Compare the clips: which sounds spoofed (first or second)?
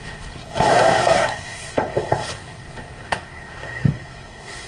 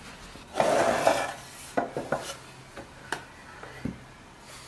first